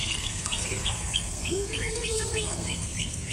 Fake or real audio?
fake